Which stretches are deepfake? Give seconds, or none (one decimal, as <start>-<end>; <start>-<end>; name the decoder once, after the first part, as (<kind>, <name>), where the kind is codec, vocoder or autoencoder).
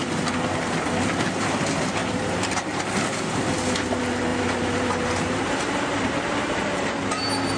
2.0-2.8 (vocoder, BigVGAN v2); 4.3-6.9